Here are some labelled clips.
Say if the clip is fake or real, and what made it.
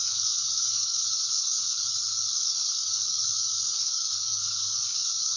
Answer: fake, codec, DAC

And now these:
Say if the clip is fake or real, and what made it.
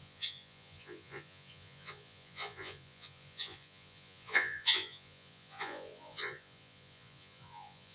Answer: fake, vocoder, Vocos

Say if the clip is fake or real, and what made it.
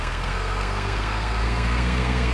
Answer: fake, codec, SNAC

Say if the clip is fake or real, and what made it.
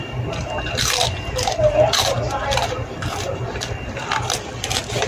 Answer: fake, vocoder, BigVGAN v2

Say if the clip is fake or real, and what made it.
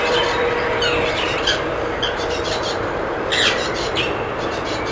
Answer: fake, vocoder, BigVGAN v2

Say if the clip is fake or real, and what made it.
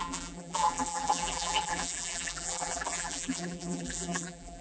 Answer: fake, vocoder, BigVGAN v2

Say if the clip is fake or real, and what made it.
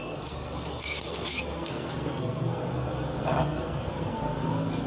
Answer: fake, codec, SNAC